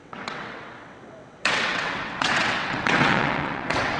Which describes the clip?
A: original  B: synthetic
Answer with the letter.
B